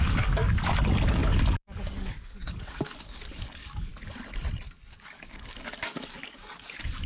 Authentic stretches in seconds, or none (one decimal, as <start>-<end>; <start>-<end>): 3.9-4.9